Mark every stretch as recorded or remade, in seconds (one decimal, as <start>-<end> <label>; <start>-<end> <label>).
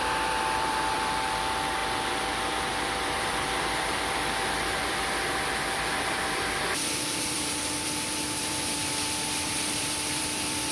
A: 0.0-10.7 remade